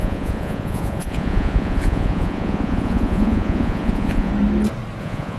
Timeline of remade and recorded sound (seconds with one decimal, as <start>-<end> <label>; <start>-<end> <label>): 0.0-4.3 remade; 4.3-5.0 recorded; 5.0-5.4 remade